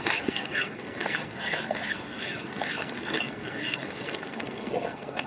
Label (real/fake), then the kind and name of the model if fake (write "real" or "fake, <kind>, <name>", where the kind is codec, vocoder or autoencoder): fake, codec, SNAC